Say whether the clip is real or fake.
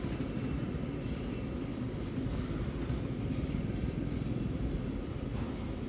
real